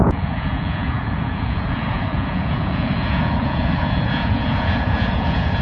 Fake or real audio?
fake